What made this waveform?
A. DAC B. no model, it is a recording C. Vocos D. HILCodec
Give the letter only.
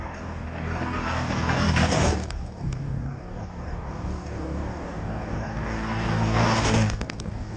A